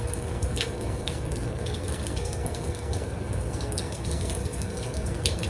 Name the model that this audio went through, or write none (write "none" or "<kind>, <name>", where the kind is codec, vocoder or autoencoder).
codec, SNAC